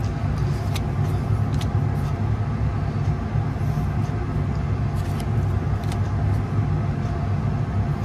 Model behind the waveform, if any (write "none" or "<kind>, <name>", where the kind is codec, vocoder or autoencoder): none